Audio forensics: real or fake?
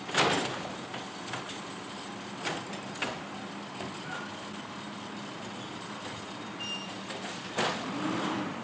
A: real